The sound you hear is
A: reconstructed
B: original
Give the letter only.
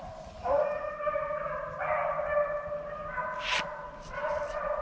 B